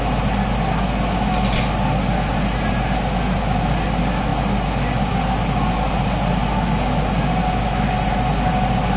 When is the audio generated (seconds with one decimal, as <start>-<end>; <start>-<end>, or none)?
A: none